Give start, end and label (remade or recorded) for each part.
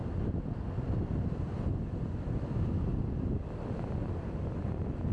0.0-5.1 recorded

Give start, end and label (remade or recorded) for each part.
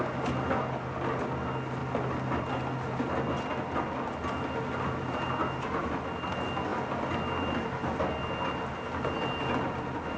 0.0-10.2 recorded